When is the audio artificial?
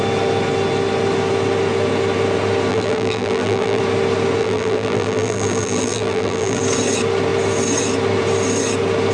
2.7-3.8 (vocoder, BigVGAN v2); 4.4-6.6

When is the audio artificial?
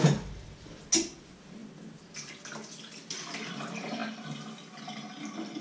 none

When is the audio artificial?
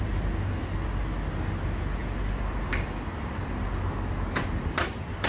2.0-3.5 (vocoder, BigVGAN v2)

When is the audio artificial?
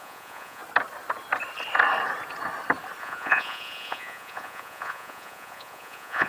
0.0-0.6 (vocoder, Vocos); 3.0-6.3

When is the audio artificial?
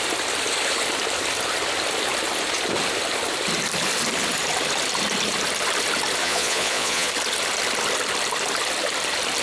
6.2-7.1 (vocoder, Vocos)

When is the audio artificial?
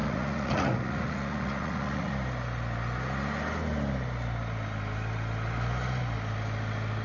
0.0-2.1 (vocoder, Vocos)